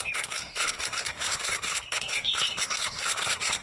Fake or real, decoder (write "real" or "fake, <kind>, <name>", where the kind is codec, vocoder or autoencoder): fake, codec, SNAC